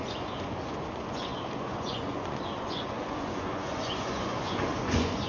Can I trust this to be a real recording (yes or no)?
no